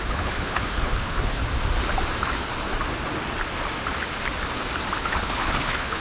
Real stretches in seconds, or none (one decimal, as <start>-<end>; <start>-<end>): 1.4-5.0